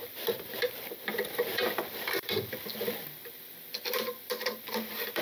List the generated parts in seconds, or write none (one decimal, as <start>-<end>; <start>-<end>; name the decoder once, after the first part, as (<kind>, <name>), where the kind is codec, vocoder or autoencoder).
0.0-5.2 (vocoder, BigVGAN v2)